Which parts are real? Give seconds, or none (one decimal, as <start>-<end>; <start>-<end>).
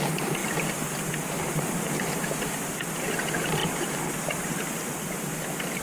0.0-3.6; 4.7-5.8